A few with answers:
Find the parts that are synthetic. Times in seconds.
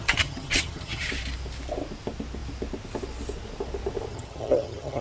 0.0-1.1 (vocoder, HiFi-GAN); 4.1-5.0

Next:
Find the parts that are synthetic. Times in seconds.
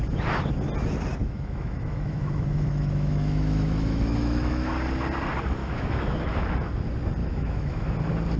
1.2-4.7 (autoencoder, DAC-VAE); 5.6-6.3; 7.2-7.9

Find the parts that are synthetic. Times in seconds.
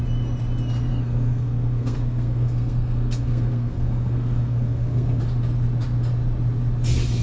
0.9-5.2 (codec, SNAC)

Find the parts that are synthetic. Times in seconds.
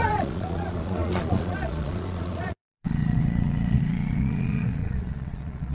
0.0-5.7 (vocoder, Vocos)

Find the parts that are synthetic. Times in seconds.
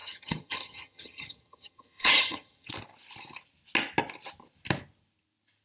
0.0-2.7 (vocoder, HiFi-GAN)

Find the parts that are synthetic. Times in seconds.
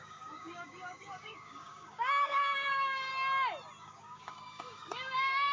0.0-3.1 (codec, DAC); 3.8-5.5